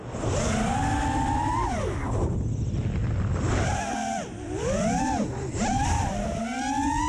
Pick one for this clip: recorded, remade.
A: recorded